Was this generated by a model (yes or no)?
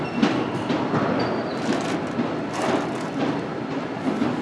no